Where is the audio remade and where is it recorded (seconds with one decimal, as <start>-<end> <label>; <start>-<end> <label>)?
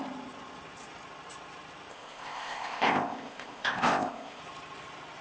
0.0-1.9 recorded; 1.9-4.4 remade; 4.4-5.2 recorded